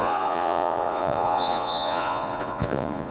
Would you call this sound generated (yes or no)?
yes